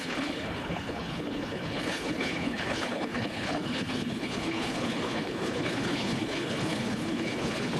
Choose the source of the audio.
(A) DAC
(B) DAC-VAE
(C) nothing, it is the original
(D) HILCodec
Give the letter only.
D